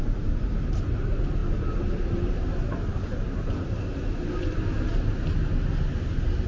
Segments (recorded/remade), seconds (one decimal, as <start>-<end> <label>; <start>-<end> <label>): 0.0-6.5 recorded